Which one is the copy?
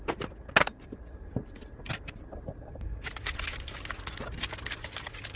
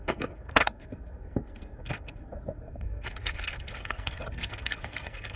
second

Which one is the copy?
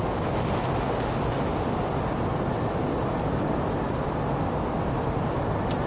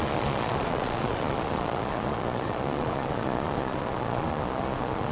second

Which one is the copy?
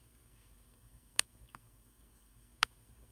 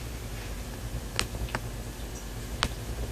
first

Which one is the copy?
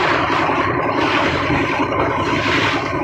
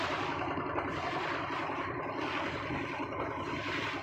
first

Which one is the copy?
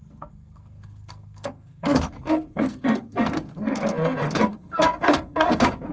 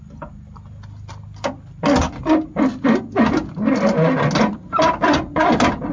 first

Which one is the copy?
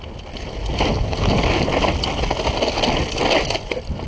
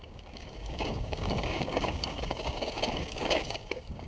second